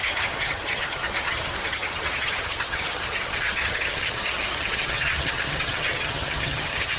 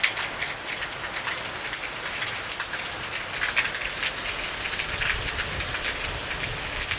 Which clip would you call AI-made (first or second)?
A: first